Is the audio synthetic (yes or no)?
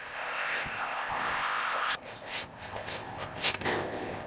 yes